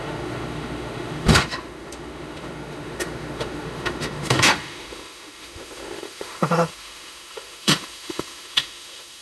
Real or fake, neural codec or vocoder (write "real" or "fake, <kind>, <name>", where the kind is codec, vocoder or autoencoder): fake, autoencoder, DAC-VAE